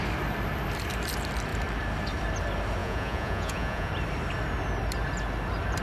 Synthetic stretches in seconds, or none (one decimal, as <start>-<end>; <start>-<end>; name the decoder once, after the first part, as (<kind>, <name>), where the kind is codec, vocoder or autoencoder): 2.8-3.9 (vocoder, Vocos)